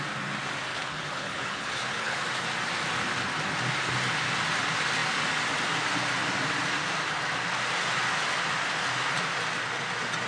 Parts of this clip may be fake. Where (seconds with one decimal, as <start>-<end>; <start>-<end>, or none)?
0.7-2.2